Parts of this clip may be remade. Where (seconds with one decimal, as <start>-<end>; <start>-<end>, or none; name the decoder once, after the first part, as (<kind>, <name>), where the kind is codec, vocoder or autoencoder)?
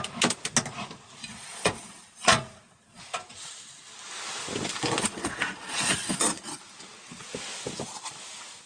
1.2-3.0 (vocoder, Vocos); 5.0-6.6